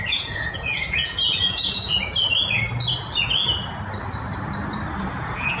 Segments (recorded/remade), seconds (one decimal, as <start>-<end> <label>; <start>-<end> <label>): 0.0-2.1 remade; 2.1-5.1 recorded; 5.1-5.6 remade